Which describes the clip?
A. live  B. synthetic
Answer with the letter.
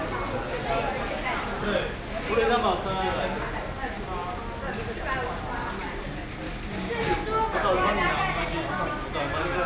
A